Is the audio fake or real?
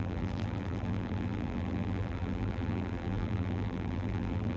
fake